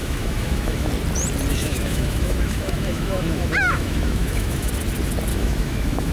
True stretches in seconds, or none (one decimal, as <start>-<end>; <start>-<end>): 0.9-1.5; 4.7-5.3